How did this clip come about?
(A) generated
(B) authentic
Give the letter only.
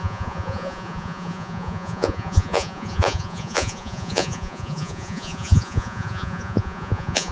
A